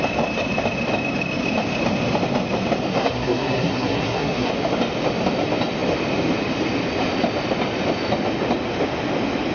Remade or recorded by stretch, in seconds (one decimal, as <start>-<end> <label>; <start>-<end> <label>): 0.0-2.9 recorded; 2.9-4.5 remade; 4.5-9.5 recorded